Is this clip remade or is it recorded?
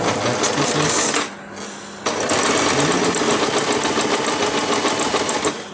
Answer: recorded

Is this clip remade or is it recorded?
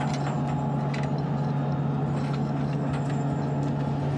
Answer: recorded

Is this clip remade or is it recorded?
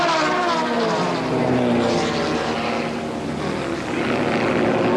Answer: recorded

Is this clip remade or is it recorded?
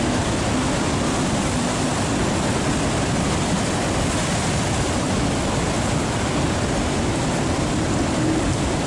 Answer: recorded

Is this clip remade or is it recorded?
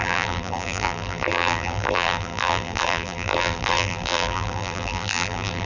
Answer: remade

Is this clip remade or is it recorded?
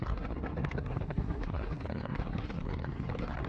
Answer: remade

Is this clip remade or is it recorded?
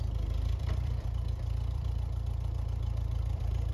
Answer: remade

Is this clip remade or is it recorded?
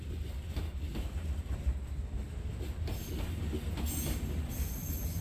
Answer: recorded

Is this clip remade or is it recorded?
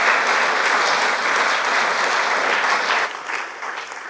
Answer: recorded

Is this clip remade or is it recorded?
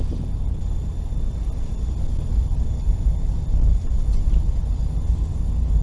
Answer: recorded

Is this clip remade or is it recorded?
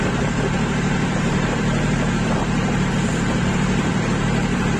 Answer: remade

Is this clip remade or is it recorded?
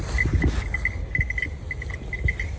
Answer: recorded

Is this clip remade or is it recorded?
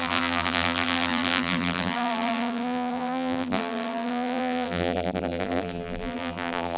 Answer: remade